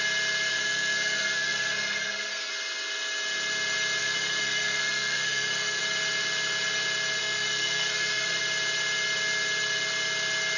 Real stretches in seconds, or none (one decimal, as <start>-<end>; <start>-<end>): 0.0-0.5; 2.5-4.0; 5.8-7.2; 8.4-10.6